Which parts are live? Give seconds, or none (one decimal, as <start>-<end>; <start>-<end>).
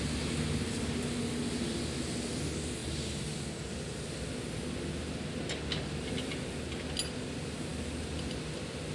0.0-8.9